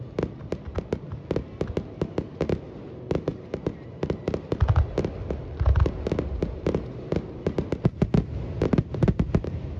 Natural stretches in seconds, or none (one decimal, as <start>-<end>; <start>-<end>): 0.0-3.3; 4.0-9.8

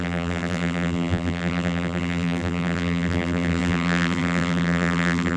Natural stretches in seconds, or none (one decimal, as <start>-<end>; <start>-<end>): none